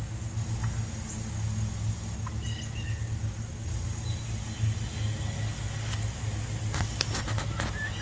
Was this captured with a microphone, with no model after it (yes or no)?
yes